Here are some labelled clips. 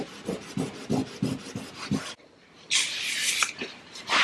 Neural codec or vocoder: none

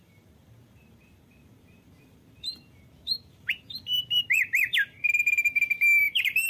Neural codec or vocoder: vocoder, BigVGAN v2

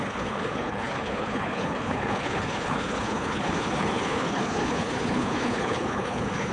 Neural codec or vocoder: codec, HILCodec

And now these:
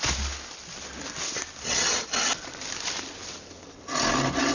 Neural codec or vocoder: none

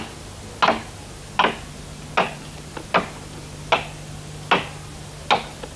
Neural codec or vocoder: none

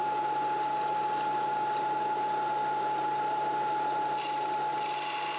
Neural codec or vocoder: none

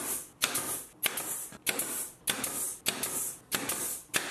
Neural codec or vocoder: none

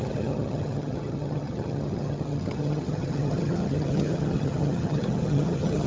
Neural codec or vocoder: vocoder, HiFi-GAN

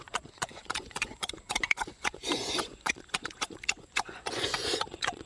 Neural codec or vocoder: vocoder, Vocos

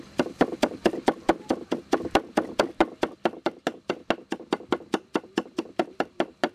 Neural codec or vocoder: none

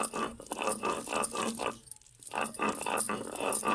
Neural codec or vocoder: none